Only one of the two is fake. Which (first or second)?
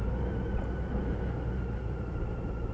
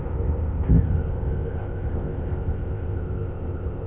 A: second